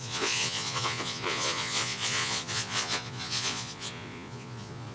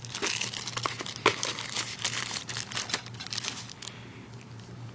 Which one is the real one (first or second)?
second